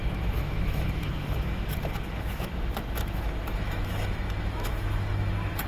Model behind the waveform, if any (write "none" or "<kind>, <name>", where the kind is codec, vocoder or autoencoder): autoencoder, DAC-VAE